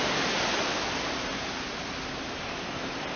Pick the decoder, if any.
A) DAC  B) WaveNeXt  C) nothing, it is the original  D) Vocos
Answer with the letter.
C